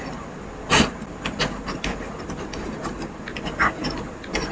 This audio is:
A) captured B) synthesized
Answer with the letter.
A